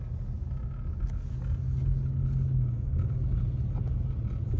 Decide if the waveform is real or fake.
real